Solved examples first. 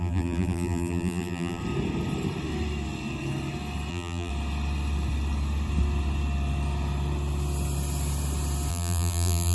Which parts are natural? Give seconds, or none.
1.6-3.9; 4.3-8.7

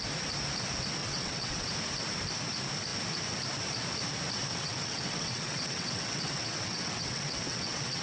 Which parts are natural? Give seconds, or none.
0.0-1.0; 1.7-4.5

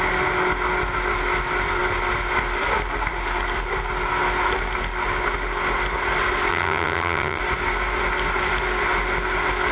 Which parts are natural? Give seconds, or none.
0.0-6.5; 7.4-9.7